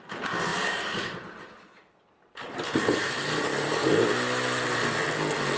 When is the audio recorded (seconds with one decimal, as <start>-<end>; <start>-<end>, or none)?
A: 0.0-0.5; 3.9-5.6